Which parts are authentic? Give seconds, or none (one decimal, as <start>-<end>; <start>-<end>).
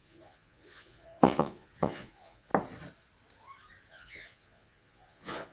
2.5-3.9